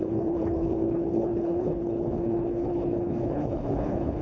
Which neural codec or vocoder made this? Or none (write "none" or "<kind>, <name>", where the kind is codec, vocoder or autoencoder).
codec, HILCodec